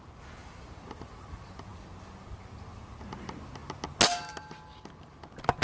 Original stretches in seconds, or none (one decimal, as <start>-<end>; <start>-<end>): 0.0-5.6